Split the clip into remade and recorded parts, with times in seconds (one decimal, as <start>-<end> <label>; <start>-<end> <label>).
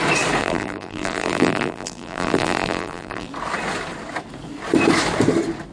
0.0-0.4 recorded; 0.4-3.3 remade; 3.3-5.7 recorded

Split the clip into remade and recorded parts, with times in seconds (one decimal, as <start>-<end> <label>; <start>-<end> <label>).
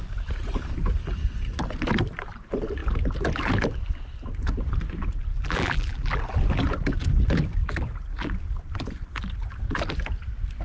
0.0-5.3 recorded; 5.3-6.2 remade; 6.2-10.6 recorded